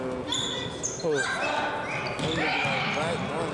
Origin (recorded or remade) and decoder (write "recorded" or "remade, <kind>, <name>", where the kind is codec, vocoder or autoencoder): recorded